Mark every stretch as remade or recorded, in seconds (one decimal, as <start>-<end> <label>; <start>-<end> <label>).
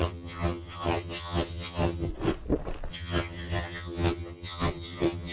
0.0-2.1 remade; 2.1-2.9 recorded; 2.9-5.3 remade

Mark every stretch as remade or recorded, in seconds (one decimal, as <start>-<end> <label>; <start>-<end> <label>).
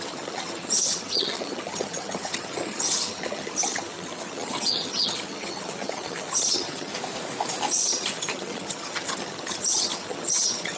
0.0-6.9 remade; 6.9-7.7 recorded; 7.7-10.8 remade